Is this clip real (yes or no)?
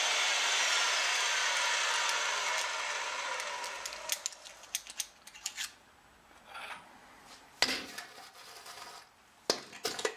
yes